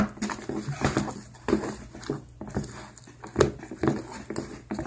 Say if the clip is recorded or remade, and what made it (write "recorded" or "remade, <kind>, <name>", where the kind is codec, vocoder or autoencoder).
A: recorded